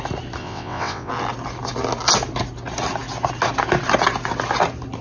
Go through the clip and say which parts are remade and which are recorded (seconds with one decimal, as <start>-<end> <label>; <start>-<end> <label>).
0.0-0.4 recorded; 0.4-1.1 remade; 1.1-5.0 recorded